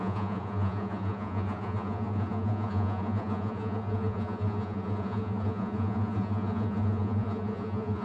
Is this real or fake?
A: fake